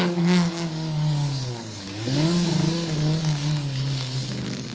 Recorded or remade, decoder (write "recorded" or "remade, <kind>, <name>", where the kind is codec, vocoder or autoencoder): remade, codec, DAC